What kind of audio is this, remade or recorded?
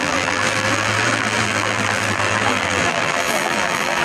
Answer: remade